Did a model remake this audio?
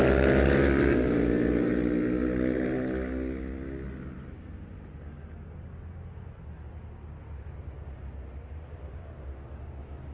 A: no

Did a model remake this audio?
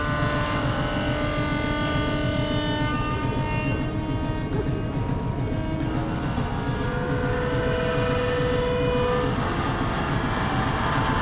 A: no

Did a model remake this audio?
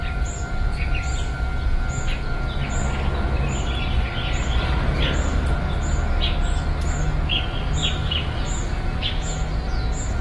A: no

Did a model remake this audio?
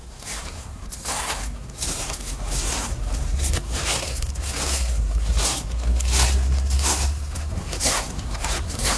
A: yes